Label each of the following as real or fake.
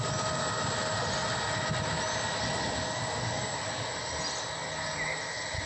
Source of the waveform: real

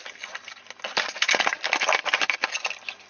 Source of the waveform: real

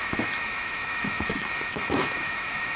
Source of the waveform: fake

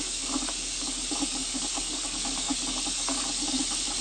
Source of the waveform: fake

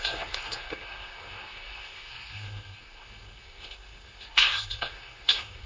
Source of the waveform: fake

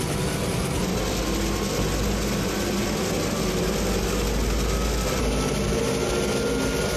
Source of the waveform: real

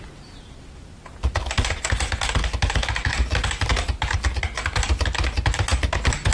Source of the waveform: real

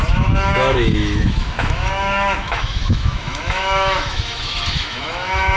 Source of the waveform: fake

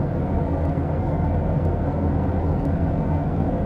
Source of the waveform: fake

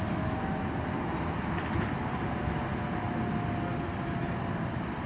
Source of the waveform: real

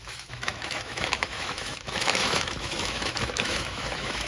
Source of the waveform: fake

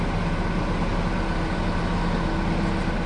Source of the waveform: real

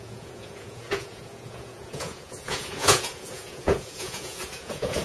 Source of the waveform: fake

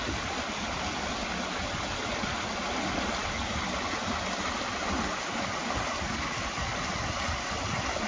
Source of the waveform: real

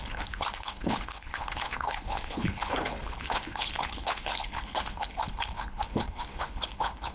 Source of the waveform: fake